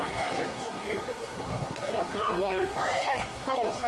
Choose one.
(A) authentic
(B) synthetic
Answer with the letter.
B